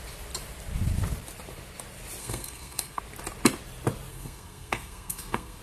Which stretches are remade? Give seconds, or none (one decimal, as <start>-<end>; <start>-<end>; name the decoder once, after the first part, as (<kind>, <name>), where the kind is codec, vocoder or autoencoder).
2.2-3.0 (codec, SNAC); 4.1-5.6

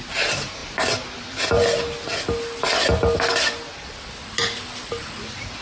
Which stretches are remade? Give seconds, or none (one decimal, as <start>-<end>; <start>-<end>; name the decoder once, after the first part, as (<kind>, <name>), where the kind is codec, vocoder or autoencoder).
none